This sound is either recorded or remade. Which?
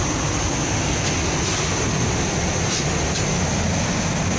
recorded